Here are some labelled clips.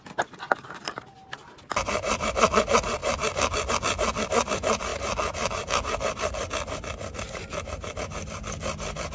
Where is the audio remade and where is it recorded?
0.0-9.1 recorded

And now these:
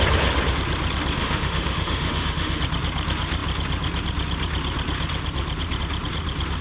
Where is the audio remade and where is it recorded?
0.0-1.2 recorded; 1.2-2.6 remade; 2.6-6.6 recorded

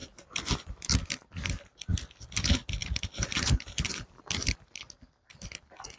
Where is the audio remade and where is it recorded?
0.0-1.1 remade; 1.1-2.8 recorded; 2.8-4.2 remade; 4.2-6.0 recorded

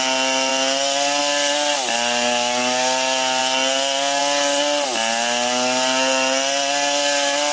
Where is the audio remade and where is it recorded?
0.0-7.5 recorded

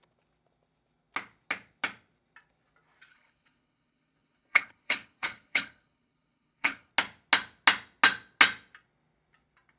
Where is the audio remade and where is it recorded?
0.0-3.1 recorded; 3.1-6.9 remade; 6.9-9.8 recorded

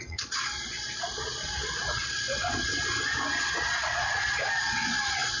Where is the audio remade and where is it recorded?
0.0-2.7 remade; 2.7-3.4 recorded; 3.4-5.4 remade

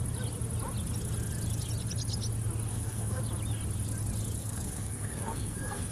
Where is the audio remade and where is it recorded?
0.0-2.7 recorded; 2.7-3.2 remade; 3.2-4.4 recorded; 4.4-5.9 remade